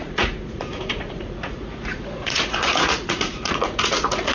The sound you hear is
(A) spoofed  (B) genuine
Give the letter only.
A